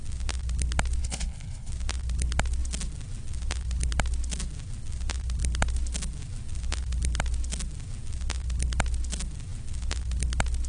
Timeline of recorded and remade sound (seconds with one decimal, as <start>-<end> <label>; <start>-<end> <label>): 0.0-1.0 recorded; 1.0-1.7 remade; 1.7-10.7 recorded